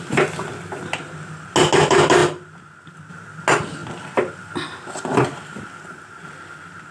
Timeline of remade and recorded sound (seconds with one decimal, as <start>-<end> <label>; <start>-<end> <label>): 0.0-6.9 recorded